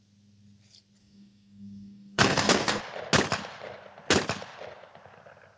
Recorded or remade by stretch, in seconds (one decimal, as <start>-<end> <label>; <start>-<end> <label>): 0.0-1.0 recorded; 1.0-2.8 remade; 2.8-5.6 recorded